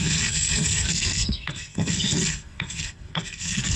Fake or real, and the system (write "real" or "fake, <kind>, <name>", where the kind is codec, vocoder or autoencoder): fake, codec, SNAC